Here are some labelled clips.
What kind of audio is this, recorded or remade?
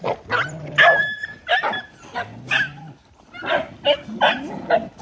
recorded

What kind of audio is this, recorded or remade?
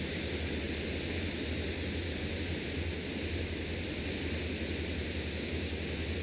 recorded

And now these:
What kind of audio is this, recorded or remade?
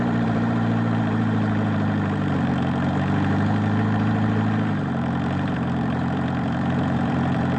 remade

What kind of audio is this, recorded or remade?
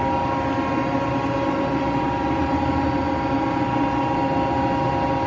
recorded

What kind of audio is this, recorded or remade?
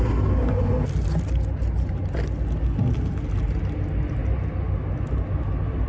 recorded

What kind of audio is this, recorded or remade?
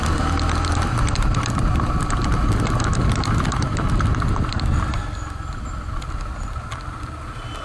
recorded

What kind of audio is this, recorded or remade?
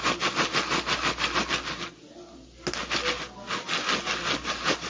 recorded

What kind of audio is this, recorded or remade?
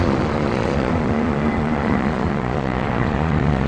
remade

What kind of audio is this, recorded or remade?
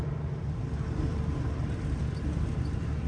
remade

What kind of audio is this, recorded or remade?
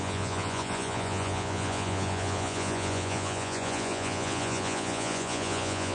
remade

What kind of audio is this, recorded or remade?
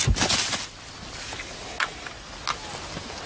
recorded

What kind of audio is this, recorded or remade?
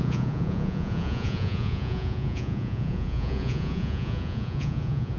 remade